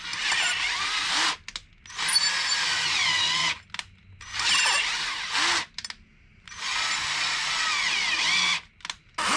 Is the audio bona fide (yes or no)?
yes